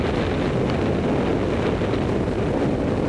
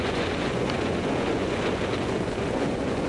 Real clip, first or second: first